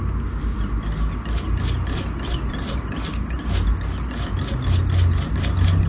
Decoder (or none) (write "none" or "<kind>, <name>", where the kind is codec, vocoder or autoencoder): none